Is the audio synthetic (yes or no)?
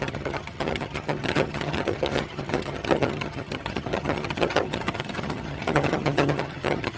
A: yes